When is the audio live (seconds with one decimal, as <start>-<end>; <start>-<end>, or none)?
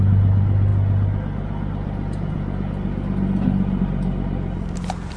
0.0-5.2